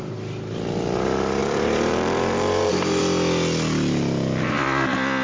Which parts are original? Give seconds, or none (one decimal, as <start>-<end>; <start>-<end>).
0.0-1.4; 3.0-5.2